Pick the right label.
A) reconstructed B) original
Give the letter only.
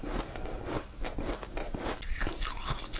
B